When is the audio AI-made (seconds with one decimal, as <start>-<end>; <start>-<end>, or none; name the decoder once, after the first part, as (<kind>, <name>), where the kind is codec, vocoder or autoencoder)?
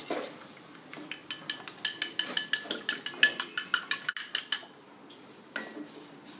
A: none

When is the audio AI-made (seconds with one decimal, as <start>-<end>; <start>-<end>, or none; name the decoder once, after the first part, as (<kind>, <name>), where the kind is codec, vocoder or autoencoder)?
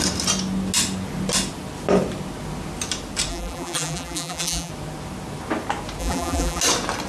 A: 3.3-4.7 (vocoder, BigVGAN v2); 6.0-6.6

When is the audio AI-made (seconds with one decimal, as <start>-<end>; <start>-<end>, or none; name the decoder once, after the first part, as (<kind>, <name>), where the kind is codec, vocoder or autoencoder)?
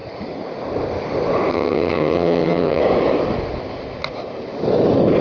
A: 1.5-2.8 (vocoder, HiFi-GAN)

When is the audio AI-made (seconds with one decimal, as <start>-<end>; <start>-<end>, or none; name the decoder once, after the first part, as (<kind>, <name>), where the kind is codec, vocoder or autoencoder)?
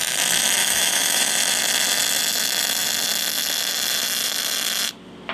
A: 0.6-1.3 (autoencoder, DAC-VAE)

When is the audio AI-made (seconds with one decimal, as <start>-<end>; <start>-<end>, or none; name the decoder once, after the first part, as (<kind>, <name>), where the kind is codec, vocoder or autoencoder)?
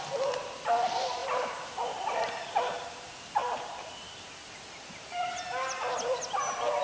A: 1.2-2.7 (vocoder, BigVGAN v2); 3.4-5.3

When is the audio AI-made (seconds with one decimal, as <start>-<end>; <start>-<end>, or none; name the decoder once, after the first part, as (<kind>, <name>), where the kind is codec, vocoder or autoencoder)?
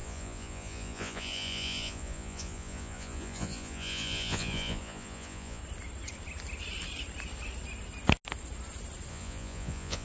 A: 0.0-5.6 (vocoder, Vocos); 9.1-10.0